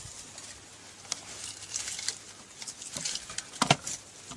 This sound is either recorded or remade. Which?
recorded